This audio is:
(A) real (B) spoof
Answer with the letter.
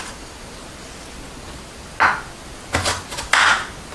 A